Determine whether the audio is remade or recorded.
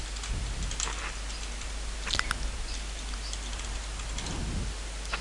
recorded